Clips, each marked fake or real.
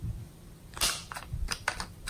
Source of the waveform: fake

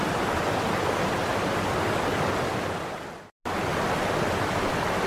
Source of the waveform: real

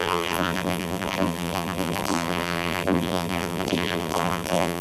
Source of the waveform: fake